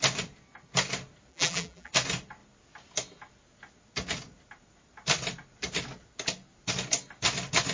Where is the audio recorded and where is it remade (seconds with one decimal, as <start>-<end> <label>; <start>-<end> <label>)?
0.0-1.3 recorded; 1.3-1.9 remade; 1.9-7.7 recorded